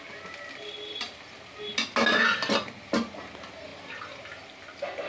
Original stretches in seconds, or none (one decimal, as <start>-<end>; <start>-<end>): 0.0-5.1